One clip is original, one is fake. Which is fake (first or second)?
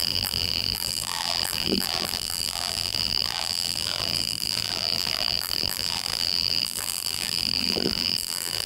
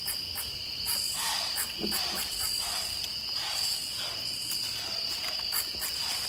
first